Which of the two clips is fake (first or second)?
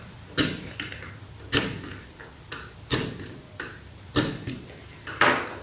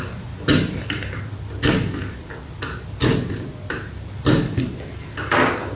first